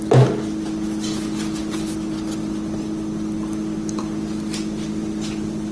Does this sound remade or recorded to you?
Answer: recorded